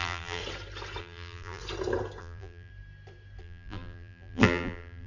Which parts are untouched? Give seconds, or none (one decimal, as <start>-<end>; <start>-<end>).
0.4-1.0; 1.6-2.2; 2.7-3.4